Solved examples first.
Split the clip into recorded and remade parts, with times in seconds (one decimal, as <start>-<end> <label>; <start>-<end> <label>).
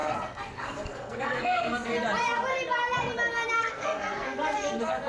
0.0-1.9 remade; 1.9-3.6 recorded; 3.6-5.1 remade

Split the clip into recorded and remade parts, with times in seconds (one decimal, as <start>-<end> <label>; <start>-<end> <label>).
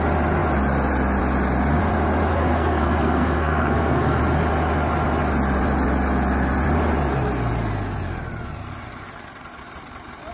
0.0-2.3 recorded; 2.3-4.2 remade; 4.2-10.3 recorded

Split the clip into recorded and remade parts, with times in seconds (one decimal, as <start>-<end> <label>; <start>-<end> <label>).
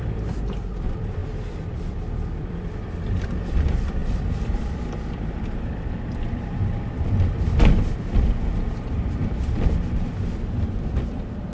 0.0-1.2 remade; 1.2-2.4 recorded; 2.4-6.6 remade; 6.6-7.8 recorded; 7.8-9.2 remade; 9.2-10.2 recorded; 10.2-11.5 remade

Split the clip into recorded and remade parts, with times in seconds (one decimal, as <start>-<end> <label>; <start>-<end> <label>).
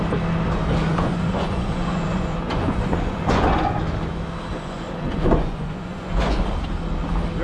0.0-0.9 recorded; 0.9-3.8 remade; 3.8-4.5 recorded; 4.5-6.4 remade; 6.4-7.4 recorded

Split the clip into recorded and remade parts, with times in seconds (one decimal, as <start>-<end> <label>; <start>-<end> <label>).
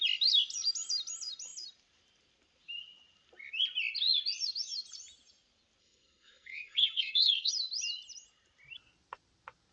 0.0-5.8 recorded; 5.8-7.5 remade; 7.5-9.7 recorded